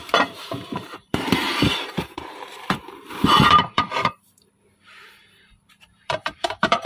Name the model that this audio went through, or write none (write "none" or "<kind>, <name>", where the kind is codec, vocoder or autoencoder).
vocoder, BigVGAN v2